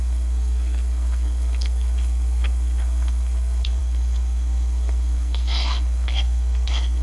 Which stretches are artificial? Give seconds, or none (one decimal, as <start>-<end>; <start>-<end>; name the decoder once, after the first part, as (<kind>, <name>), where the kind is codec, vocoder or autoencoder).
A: 0.0-7.0 (codec, SNAC)